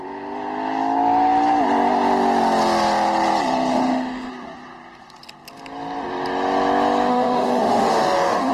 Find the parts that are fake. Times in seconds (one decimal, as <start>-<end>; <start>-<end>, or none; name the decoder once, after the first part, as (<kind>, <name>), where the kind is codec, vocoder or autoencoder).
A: 3.7-4.3 (autoencoder, DAC-VAE); 7.1-8.5